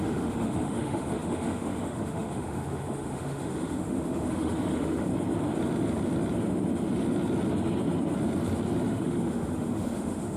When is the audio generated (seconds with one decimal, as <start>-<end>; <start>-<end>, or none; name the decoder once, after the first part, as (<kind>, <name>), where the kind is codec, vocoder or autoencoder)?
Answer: 0.0-5.1 (autoencoder, DAC-VAE); 8.9-10.4